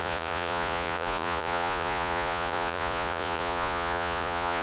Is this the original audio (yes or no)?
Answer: no